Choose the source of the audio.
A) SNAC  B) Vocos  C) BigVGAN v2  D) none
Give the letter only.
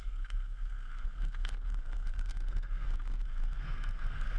A